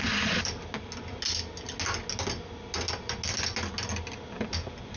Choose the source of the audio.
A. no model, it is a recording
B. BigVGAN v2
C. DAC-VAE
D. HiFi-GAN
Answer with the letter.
A